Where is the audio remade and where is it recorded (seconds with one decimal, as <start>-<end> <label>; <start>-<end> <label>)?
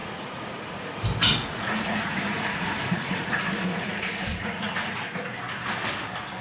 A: 0.0-1.0 remade; 1.0-1.4 recorded; 1.4-5.2 remade; 5.2-6.4 recorded